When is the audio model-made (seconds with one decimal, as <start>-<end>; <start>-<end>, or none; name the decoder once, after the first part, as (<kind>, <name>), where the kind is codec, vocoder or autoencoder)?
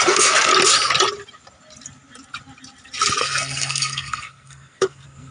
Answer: 0.0-0.5 (codec, SNAC); 3.2-5.3